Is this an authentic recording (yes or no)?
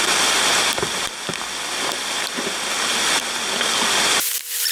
yes